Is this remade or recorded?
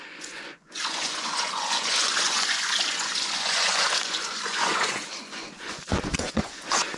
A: remade